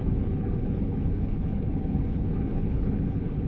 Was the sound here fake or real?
fake